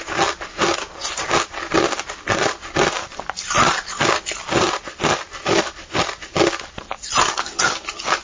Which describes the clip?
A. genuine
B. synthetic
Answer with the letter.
A